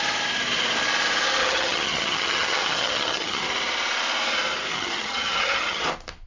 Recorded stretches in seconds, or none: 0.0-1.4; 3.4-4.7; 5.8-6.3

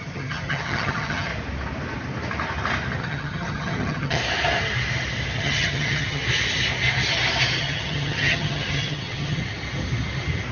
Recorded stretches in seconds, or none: 1.3-3.0; 4.2-5.4; 6.2-7.6; 9.4-10.5

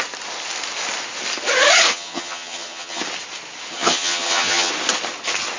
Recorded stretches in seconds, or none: 0.0-1.9; 3.0-3.7; 4.7-5.6

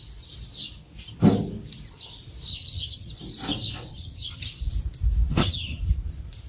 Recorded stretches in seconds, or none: 0.0-2.5; 3.1-3.9; 4.5-5.3; 5.8-6.5